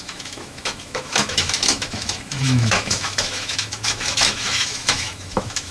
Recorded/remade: remade